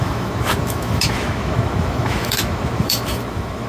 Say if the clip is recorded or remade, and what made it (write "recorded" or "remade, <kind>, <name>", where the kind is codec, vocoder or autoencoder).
remade, autoencoder, DAC-VAE